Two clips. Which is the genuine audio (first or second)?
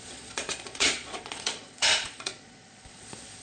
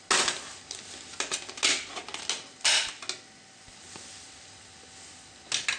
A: second